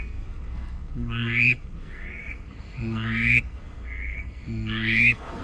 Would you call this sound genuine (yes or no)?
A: no